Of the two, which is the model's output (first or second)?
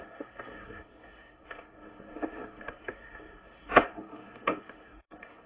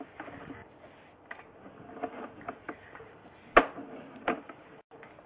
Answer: first